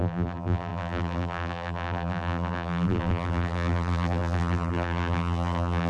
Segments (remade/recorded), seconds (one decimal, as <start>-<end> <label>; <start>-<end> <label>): 0.0-5.9 remade